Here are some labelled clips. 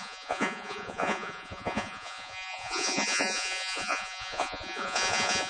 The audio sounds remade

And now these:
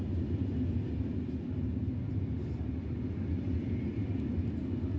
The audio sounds recorded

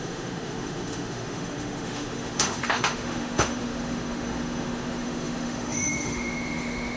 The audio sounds remade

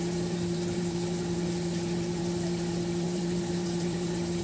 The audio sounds remade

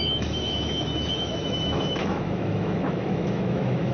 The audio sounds remade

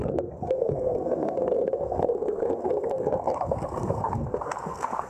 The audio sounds remade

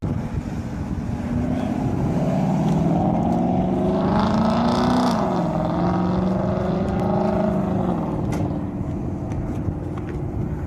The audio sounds recorded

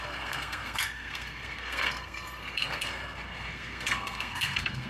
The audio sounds remade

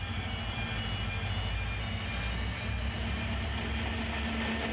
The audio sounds recorded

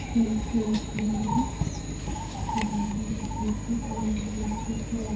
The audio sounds remade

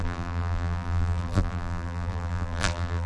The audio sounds remade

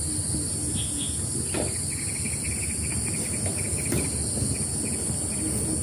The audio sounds recorded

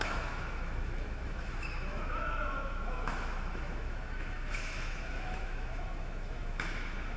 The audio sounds remade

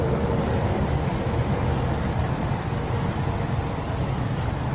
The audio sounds remade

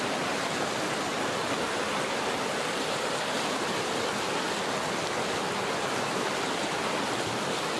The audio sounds recorded